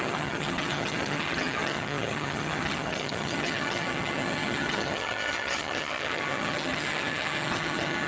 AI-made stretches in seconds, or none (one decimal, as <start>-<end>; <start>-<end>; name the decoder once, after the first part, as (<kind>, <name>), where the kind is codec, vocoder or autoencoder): 0.0-8.1 (vocoder, HiFi-GAN)